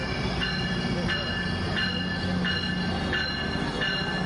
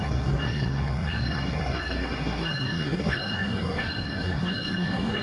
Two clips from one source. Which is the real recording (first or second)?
first